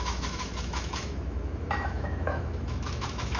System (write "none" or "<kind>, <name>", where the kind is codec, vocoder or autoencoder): autoencoder, DAC-VAE